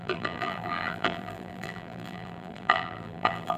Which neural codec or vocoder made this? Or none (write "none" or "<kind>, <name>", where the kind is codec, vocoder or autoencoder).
vocoder, BigVGAN v2